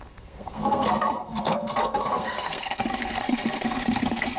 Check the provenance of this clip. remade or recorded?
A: remade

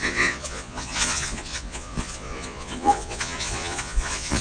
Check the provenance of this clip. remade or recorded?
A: remade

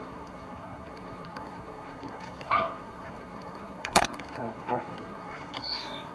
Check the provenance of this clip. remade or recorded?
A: remade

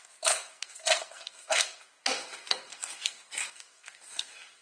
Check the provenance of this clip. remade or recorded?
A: remade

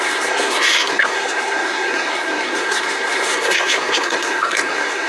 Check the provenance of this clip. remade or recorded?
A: remade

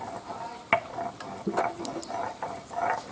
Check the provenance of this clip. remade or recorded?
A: recorded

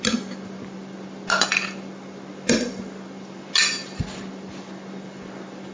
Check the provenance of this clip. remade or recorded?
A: recorded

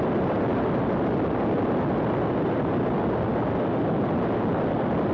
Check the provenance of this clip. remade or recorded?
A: recorded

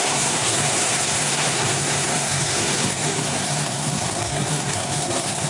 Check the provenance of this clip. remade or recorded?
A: remade